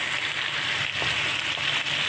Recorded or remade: recorded